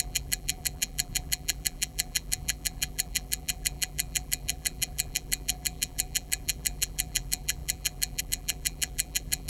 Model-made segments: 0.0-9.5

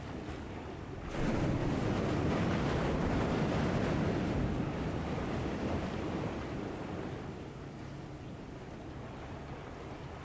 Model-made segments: none

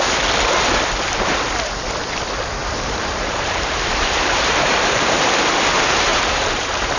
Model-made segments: 2.6-5.1; 6.1-7.0

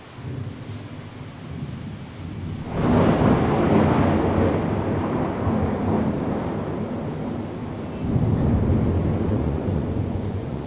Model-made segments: 9.3-10.7

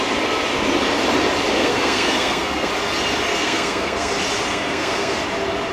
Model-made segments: 1.6-2.7; 3.3-4.1; 4.5-5.2

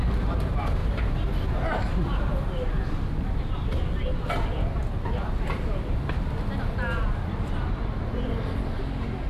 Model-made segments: none

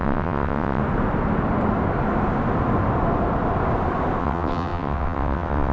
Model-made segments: 0.0-0.8; 4.2-5.7